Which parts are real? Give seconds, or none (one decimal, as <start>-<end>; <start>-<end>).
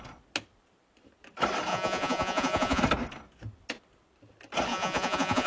0.0-1.7; 2.8-4.7